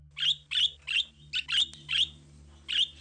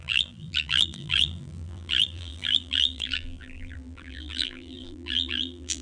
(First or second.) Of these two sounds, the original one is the first